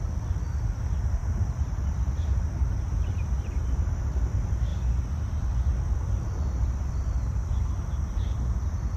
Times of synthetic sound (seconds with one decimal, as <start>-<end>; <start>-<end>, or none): none